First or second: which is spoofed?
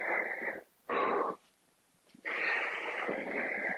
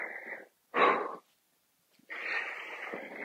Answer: first